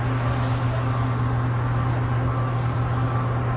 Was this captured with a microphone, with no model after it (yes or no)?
yes